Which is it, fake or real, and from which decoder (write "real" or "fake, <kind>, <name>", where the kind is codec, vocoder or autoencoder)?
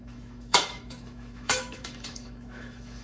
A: fake, autoencoder, DAC-VAE